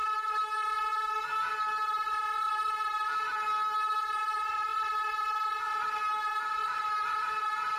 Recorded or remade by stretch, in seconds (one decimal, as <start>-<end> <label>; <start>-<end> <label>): 0.0-7.8 recorded